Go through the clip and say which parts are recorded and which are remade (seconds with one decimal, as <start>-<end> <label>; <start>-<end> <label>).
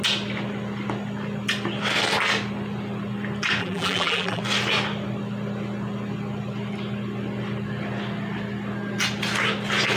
0.0-3.6 recorded; 3.6-4.4 remade; 4.4-10.0 recorded